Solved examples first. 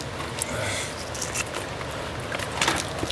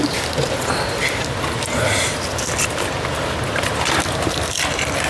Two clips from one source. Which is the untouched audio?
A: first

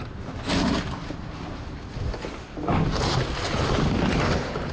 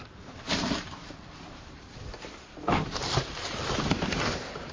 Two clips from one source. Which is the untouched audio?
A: first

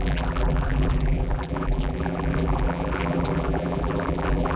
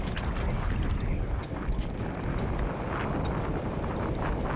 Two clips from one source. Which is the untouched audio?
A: second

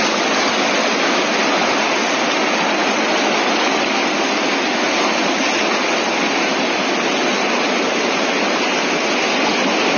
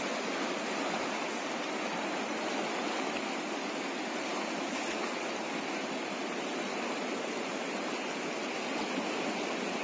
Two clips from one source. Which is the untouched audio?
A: first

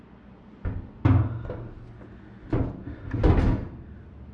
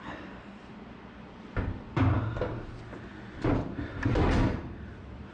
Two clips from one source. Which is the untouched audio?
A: first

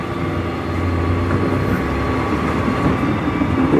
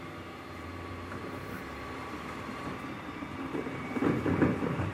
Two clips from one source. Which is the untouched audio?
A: first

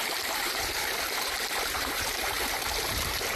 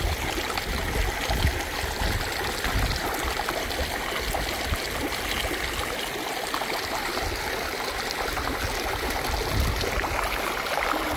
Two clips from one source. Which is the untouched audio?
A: second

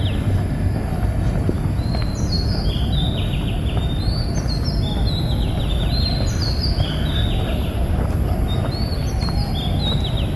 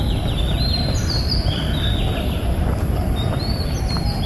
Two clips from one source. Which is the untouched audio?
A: first